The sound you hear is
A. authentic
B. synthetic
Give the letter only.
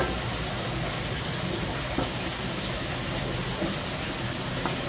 A